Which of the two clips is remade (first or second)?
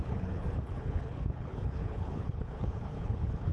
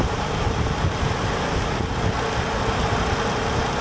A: first